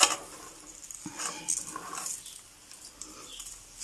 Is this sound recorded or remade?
recorded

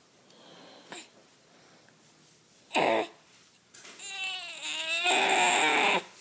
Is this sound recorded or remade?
recorded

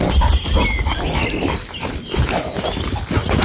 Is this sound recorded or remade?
recorded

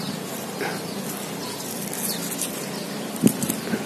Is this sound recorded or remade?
recorded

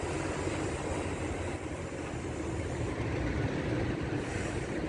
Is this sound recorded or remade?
recorded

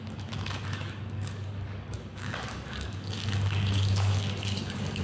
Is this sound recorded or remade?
remade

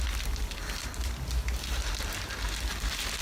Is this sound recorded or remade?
recorded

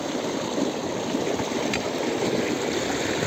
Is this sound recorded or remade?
recorded